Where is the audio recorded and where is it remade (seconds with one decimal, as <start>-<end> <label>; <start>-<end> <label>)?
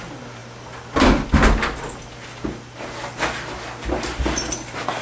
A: 0.0-5.0 recorded